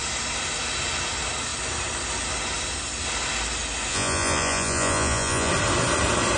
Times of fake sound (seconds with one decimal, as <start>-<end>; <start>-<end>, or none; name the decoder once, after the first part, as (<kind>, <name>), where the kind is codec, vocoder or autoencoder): 3.9-5.5 (vocoder, Vocos)